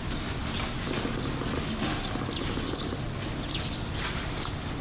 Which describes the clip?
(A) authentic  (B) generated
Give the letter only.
A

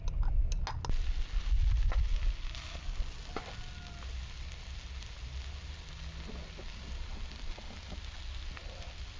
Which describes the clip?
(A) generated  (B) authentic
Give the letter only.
B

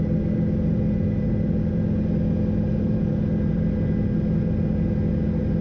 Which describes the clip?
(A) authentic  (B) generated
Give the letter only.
A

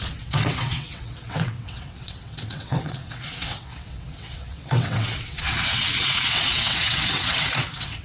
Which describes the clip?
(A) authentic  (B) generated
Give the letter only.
B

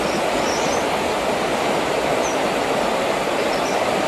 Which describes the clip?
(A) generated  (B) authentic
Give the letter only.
B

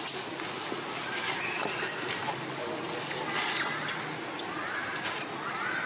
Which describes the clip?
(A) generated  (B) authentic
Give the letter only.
B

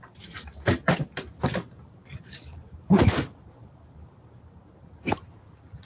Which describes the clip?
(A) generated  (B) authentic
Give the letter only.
A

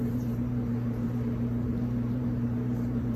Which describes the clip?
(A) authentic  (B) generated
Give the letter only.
B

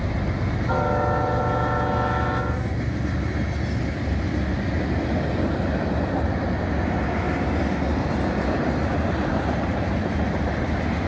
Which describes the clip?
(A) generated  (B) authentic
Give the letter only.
B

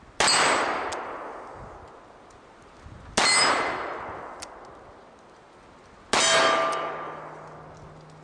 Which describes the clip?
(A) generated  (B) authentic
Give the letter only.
B